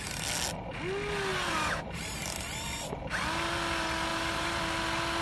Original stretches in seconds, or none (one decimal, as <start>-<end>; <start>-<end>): 0.0-1.3; 2.4-4.1; 4.6-5.2

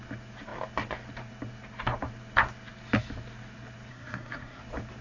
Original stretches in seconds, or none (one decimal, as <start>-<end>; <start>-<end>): 0.0-3.9; 4.6-5.0

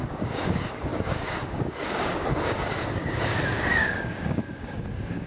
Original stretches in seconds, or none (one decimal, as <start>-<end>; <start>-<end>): none

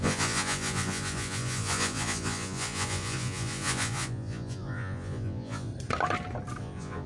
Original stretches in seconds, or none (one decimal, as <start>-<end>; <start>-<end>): 5.7-6.6